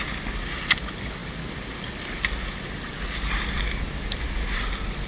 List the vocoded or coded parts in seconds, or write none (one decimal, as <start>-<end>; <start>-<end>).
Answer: none